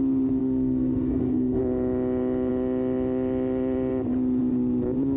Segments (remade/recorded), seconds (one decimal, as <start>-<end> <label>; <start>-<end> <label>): 0.0-0.4 recorded; 0.4-1.6 remade; 1.6-5.2 recorded